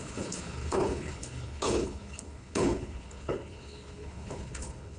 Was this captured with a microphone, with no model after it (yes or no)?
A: no